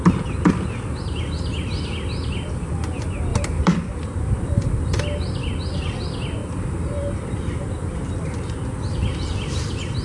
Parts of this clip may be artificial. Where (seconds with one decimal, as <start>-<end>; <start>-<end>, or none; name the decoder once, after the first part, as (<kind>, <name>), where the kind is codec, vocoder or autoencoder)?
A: 3.3-5.0 (vocoder, BigVGAN v2); 6.4-9.3